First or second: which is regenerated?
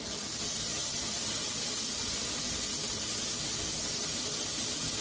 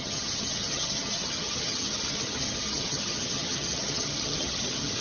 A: second